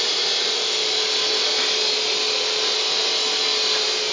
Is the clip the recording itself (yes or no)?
yes